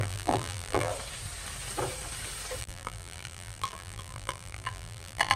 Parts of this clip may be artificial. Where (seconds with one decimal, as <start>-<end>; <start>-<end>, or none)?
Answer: 0.0-0.9; 2.6-5.4